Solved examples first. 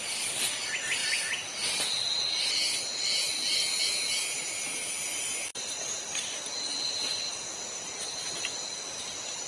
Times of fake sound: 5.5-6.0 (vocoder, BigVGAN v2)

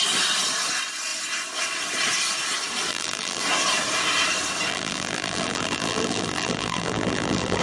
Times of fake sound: 2.9-3.4 (vocoder, BigVGAN v2); 4.7-7.6

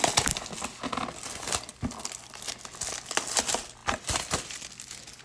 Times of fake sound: 3.8-5.2 (vocoder, BigVGAN v2)

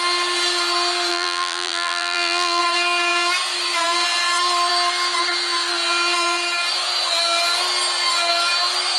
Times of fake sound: 1.1-2.6 (vocoder, BigVGAN v2)

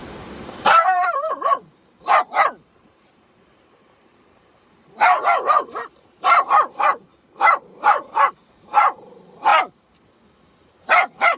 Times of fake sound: 0.0-9.5 (vocoder, BigVGAN v2); 10.8-11.4

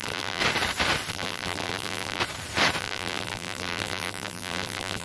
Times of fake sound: 0.0-0.4 (vocoder, BigVGAN v2); 1.1-2.2; 2.8-5.0

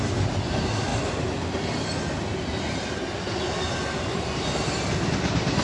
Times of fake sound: none